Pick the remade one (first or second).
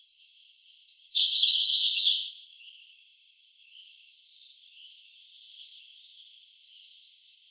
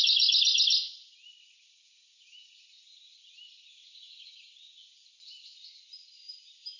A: first